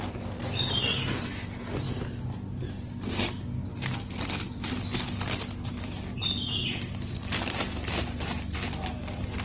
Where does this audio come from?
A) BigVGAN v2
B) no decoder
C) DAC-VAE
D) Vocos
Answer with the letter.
B